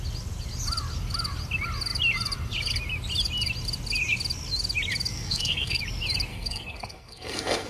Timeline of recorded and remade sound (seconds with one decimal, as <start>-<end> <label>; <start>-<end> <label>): 0.0-5.1 recorded; 5.1-5.8 remade; 5.8-6.3 recorded; 6.3-7.7 remade